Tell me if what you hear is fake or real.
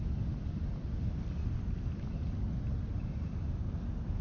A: real